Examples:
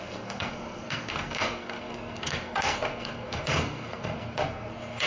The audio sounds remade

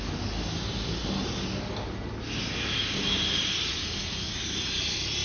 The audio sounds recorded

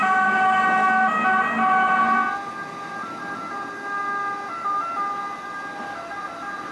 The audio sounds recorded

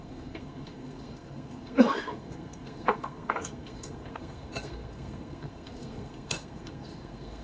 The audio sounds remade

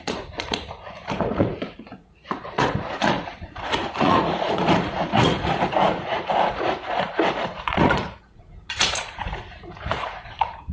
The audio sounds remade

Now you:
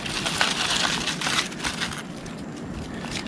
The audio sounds recorded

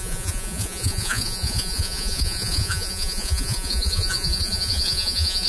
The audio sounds remade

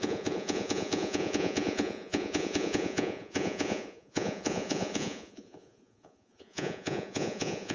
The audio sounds remade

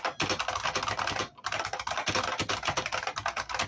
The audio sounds recorded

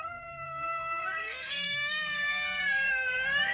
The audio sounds remade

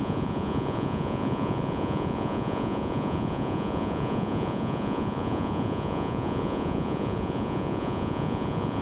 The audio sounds remade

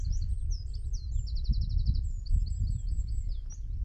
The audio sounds recorded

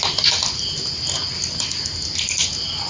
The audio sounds recorded